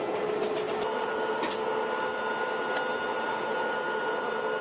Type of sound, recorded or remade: recorded